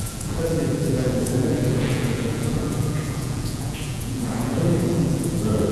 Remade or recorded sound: remade